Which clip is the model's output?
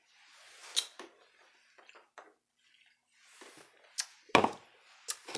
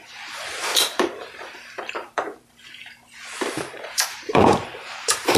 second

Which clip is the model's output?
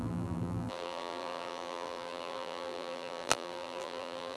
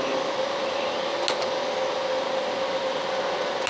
first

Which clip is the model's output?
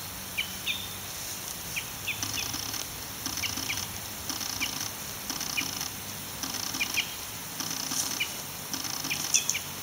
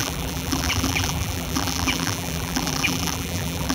second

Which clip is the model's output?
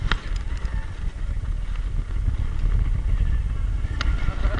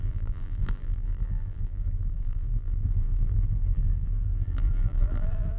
second